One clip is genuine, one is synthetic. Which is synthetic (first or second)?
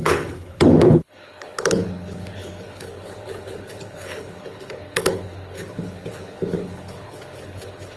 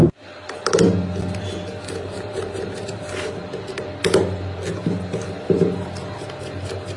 first